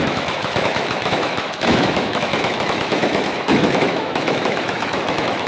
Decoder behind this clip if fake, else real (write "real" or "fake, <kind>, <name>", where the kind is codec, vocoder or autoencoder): fake, autoencoder, DAC-VAE